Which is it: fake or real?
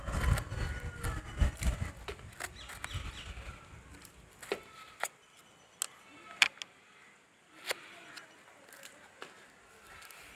real